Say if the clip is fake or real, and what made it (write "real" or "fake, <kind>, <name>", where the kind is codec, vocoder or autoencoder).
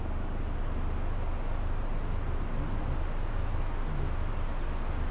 real